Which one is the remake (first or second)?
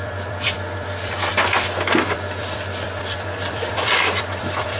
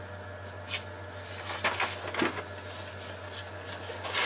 first